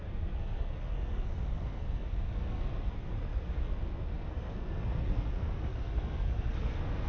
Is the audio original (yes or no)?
no